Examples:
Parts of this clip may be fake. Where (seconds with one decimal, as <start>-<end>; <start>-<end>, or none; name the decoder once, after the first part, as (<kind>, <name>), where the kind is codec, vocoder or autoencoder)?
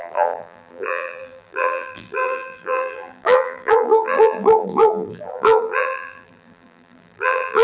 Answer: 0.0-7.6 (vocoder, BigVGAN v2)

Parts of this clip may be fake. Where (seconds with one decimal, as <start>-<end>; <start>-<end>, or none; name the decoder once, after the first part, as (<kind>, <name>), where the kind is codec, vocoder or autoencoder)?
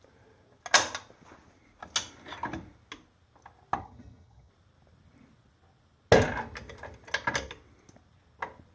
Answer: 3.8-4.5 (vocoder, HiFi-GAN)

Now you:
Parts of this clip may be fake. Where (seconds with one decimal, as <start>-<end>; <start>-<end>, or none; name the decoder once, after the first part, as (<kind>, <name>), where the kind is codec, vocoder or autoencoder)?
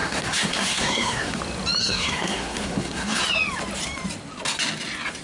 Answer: 0.0-1.4 (codec, SNAC); 1.8-3.2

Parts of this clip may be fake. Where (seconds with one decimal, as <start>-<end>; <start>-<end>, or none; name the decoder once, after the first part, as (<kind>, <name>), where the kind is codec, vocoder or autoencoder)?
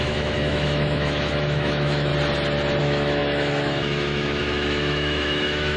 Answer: 0.0-2.1 (autoencoder, DAC-VAE); 2.8-5.8